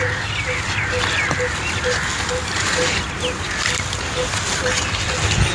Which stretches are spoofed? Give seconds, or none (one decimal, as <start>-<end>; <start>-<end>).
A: none